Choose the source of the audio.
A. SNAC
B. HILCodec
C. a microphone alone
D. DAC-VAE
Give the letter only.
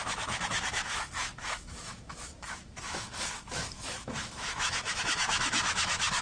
D